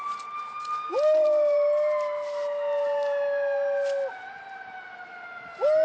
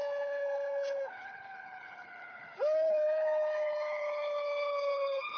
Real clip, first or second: first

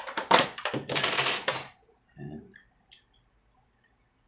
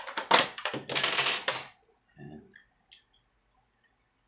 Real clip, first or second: second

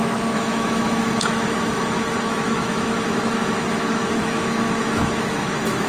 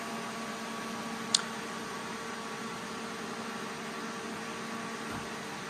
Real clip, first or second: second